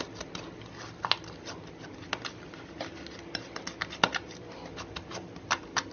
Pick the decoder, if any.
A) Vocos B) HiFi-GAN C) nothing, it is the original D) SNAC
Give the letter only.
C